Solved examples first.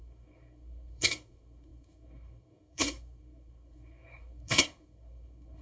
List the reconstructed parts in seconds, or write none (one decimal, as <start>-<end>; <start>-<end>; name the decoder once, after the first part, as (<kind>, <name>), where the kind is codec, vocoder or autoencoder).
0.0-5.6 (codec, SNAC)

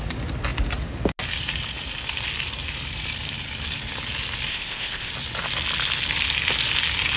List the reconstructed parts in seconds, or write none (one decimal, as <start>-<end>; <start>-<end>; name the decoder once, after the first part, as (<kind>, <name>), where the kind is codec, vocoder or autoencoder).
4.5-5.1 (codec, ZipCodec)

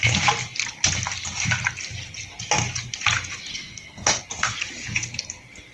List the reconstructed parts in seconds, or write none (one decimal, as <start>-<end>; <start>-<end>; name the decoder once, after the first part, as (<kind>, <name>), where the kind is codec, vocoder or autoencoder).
3.5-4.2 (codec, SNAC)

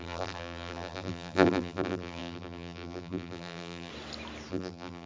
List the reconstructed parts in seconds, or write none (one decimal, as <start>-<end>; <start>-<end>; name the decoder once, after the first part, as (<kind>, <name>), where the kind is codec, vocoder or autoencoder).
0.0-3.9 (vocoder, BigVGAN v2); 4.5-5.1

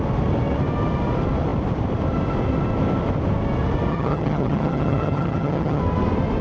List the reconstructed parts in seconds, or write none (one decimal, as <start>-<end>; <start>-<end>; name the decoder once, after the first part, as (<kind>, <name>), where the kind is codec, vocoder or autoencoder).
3.9-5.8 (vocoder, HiFi-GAN)

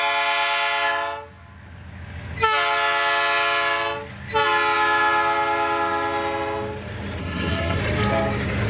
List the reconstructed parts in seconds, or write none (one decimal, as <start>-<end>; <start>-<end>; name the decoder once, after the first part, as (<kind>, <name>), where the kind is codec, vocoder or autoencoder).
7.2-7.8 (codec, SNAC)

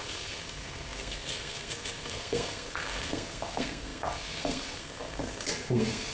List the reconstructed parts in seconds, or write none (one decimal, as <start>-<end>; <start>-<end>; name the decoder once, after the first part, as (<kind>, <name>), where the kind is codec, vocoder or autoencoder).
0.0-6.1 (codec, SNAC)